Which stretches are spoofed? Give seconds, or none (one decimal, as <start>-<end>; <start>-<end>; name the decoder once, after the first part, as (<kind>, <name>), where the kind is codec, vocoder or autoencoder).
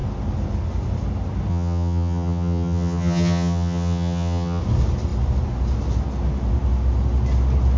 1.5-4.6 (vocoder, HiFi-GAN)